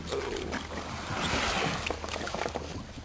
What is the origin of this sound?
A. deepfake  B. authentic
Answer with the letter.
B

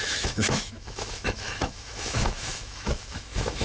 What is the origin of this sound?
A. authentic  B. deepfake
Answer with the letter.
B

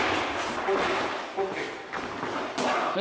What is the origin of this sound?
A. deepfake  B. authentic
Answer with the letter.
B